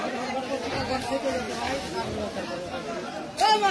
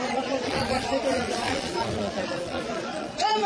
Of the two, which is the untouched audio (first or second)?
first